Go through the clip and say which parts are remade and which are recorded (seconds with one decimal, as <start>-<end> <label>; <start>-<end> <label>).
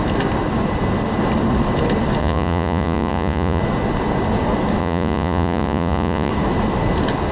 0.0-2.2 recorded; 2.2-3.6 remade; 3.6-4.8 recorded; 4.8-6.3 remade; 6.3-7.3 recorded